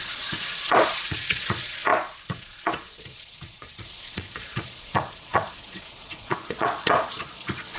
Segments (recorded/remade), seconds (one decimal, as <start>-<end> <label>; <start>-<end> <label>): 0.0-7.8 remade